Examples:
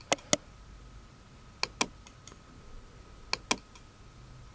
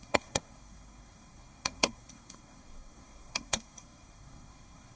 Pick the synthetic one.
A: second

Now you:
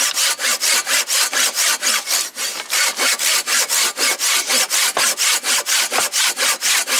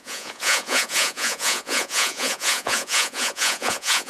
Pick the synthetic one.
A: second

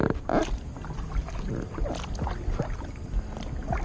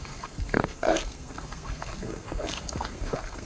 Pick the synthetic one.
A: second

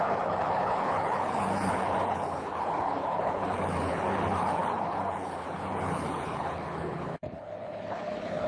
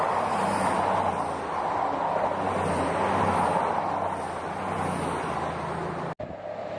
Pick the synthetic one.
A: first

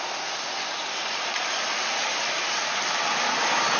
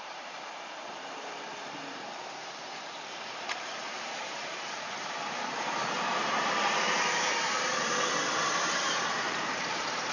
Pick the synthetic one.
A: second